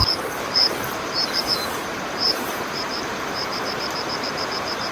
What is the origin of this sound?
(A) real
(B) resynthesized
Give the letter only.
B